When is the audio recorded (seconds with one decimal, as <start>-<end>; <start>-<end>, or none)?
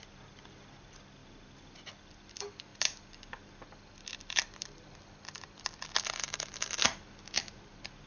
0.0-8.1